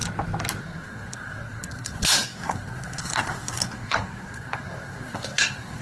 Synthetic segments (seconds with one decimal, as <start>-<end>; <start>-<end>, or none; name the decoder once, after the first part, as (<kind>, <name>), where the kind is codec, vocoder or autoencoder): 0.6-5.8 (codec, SNAC)